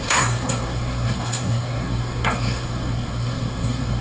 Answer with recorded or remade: remade